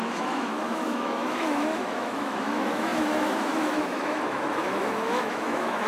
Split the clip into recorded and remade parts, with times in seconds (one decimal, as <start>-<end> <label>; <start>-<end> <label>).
0.0-5.9 remade

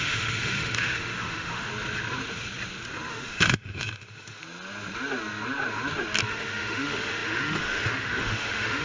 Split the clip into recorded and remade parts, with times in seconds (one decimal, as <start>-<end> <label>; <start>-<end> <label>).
0.0-1.7 remade; 1.7-3.1 recorded; 3.1-4.4 remade; 4.4-6.3 recorded; 6.3-8.8 remade

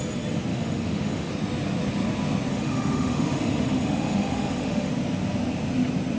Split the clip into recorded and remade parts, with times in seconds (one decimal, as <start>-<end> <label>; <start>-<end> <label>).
0.0-0.5 recorded; 0.5-1.3 remade; 1.3-2.5 recorded; 2.5-4.9 remade; 4.9-6.2 recorded

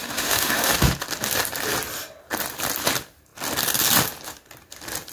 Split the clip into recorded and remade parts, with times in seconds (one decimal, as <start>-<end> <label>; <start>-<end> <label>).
0.0-0.7 remade; 0.7-5.1 recorded

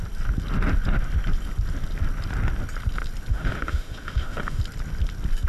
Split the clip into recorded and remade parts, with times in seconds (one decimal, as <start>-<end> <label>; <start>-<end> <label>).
0.0-3.3 recorded; 3.3-4.6 remade; 4.6-5.5 recorded